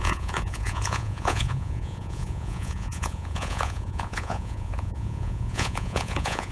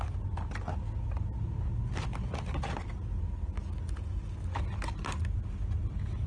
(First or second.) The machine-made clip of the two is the first